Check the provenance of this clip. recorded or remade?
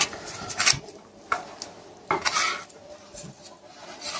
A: recorded